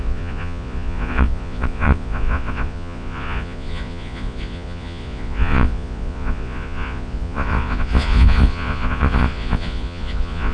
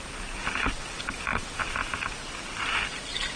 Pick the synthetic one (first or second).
first